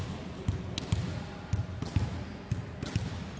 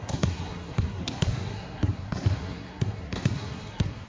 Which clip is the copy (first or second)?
second